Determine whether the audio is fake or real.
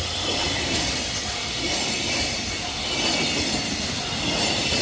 real